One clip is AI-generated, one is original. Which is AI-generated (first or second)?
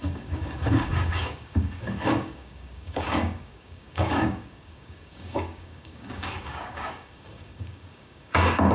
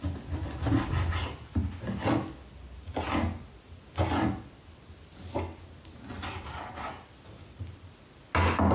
first